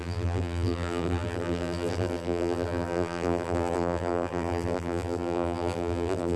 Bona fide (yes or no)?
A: no